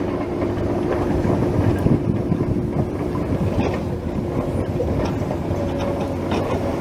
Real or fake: real